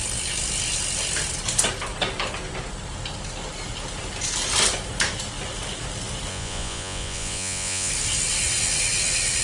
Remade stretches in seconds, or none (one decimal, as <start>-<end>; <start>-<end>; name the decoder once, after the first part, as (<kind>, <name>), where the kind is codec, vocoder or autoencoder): 6.3-7.9 (vocoder, Vocos)